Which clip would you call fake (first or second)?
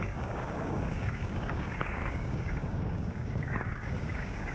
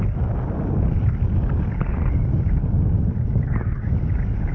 first